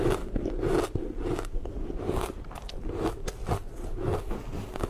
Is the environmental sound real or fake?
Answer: real